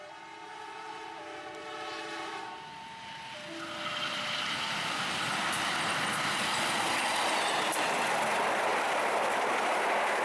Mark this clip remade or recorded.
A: recorded